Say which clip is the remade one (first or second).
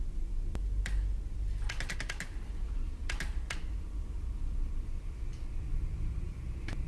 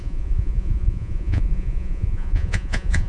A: second